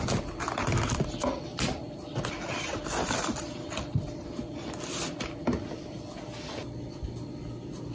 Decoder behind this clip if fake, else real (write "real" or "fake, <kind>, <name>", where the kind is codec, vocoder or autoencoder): real